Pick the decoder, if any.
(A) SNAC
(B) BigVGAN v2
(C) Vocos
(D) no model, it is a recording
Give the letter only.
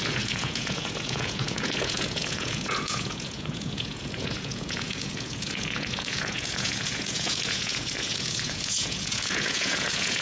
C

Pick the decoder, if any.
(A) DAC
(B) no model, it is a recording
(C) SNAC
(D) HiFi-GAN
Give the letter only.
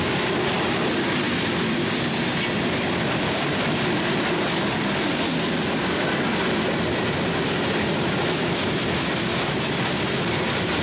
B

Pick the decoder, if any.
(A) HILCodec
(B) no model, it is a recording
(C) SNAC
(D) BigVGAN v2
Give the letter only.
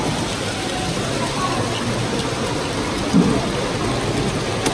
B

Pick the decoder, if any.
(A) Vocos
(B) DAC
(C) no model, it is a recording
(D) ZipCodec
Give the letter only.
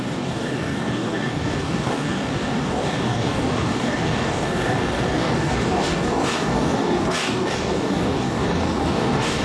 B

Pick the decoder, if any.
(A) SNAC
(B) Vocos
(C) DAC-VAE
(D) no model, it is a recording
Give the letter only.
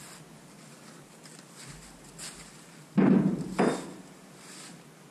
D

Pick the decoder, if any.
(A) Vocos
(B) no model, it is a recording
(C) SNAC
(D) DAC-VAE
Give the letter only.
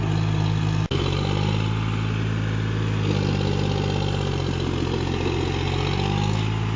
B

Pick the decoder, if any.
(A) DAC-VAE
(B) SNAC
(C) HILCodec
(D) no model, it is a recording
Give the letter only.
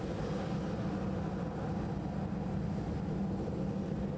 D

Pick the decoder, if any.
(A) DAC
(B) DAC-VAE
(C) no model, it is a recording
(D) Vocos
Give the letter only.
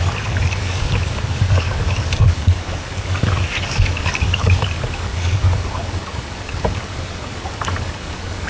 A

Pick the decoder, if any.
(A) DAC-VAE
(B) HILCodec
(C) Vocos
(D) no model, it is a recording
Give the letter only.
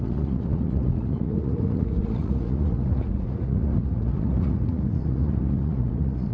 C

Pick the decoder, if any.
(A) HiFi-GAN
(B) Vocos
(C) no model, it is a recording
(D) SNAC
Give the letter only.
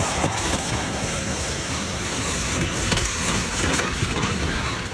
D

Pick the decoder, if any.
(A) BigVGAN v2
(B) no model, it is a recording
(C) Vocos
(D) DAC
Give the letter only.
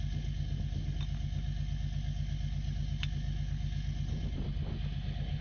B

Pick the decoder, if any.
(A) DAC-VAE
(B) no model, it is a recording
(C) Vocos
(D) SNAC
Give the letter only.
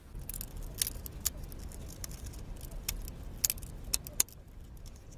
B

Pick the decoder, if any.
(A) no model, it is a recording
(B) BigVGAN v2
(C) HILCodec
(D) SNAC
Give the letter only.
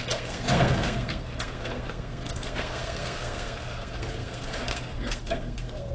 D